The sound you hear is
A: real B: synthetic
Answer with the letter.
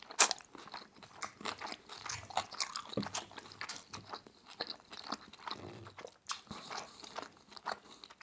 A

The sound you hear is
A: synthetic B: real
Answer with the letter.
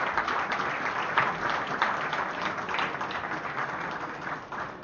B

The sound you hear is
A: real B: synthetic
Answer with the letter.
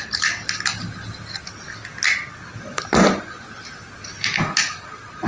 A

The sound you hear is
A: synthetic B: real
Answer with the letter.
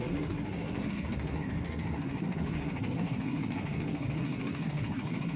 A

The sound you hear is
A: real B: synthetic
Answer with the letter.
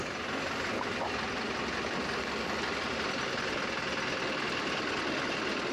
A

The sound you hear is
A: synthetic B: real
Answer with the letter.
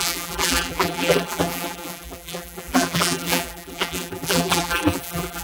A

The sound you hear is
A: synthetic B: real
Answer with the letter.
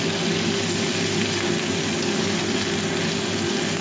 B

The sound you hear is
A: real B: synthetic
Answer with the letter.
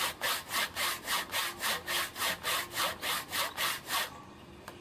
A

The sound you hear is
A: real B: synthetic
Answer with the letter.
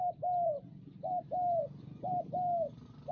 A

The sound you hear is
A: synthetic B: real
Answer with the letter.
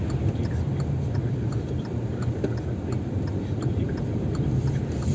B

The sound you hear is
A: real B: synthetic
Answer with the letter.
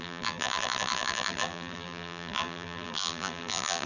B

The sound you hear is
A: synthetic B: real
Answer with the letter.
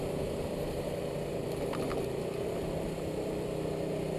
B